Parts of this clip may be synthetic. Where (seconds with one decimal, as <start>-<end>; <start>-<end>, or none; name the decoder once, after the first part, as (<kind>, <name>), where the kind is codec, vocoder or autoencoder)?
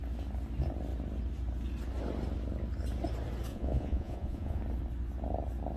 3.5-4.6 (vocoder, Vocos)